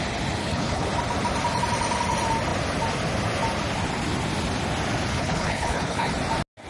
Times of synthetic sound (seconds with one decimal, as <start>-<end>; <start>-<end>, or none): 0.4-0.9; 5.1-6.1